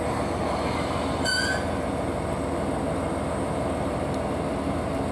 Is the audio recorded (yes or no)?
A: yes